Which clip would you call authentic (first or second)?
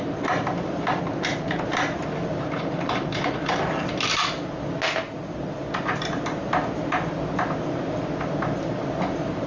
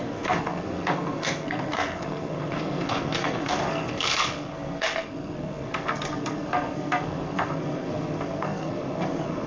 first